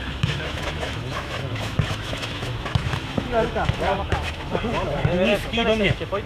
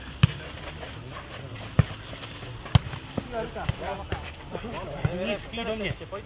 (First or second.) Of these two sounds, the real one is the second